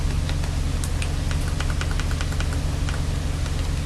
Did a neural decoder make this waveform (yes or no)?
no